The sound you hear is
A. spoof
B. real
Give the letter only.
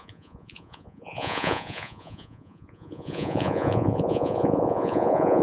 A